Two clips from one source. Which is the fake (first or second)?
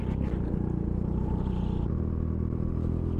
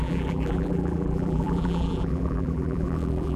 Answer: second